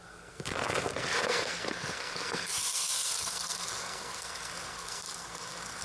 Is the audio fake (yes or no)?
yes